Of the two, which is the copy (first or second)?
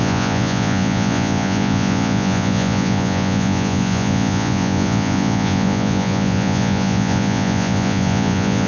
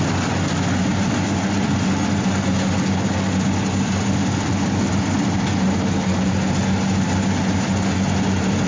first